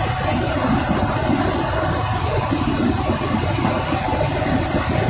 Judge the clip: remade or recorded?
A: recorded